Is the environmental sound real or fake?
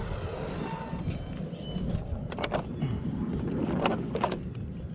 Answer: real